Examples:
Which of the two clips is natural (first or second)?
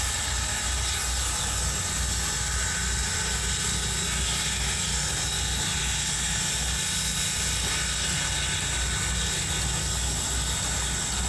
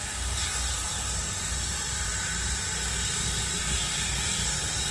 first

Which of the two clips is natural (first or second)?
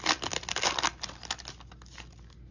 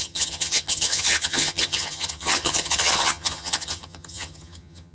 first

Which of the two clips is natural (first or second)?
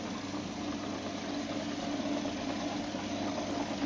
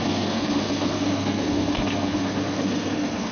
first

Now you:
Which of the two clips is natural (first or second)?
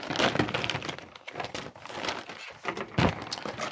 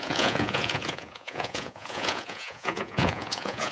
first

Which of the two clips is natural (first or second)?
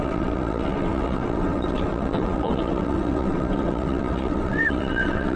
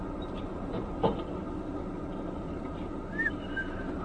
second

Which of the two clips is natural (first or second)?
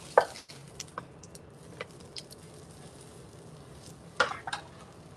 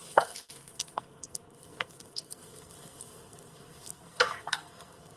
first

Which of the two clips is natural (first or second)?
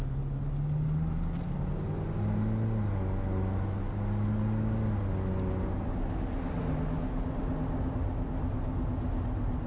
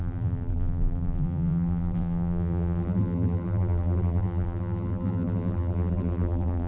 first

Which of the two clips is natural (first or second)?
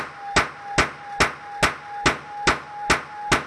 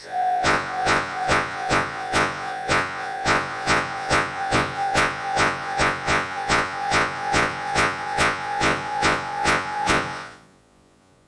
first